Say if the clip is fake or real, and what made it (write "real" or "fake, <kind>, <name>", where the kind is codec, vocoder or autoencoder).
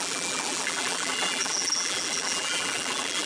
fake, vocoder, BigVGAN v2